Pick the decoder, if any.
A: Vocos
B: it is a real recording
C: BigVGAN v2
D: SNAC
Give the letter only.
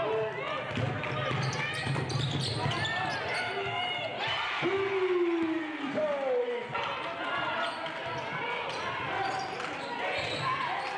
B